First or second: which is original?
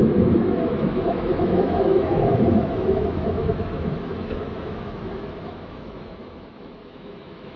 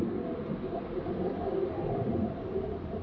second